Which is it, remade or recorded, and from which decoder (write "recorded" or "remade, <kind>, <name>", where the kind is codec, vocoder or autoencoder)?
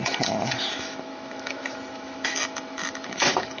remade, autoencoder, DAC-VAE